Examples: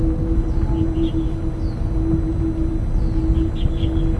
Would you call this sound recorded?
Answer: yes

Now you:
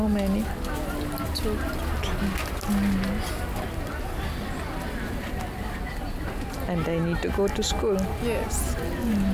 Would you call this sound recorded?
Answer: yes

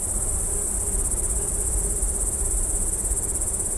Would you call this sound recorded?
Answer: no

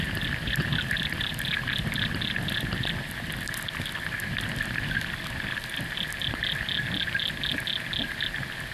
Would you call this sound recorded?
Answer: yes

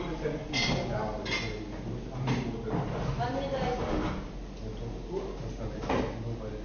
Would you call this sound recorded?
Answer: yes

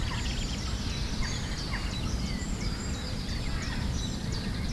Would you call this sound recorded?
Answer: no